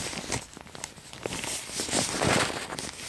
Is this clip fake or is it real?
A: real